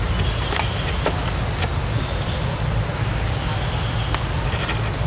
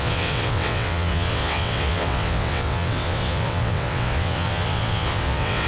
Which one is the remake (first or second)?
second